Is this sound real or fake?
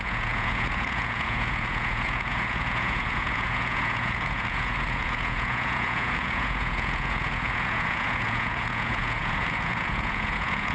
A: fake